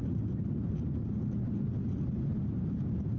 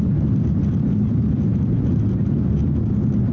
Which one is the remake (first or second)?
first